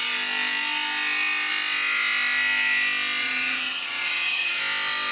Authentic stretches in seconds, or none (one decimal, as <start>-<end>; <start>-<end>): 0.0-3.2; 4.6-5.1

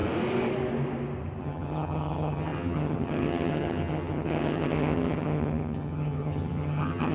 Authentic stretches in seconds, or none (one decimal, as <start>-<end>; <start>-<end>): 0.0-1.4